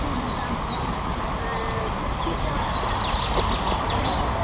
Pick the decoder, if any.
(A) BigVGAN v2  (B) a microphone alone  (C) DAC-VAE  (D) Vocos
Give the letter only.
B